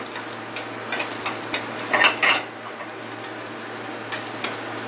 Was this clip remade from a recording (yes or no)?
no